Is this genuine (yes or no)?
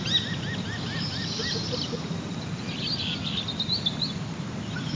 yes